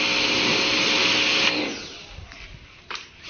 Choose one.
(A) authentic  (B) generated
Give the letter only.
A